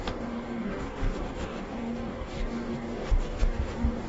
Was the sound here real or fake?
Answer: fake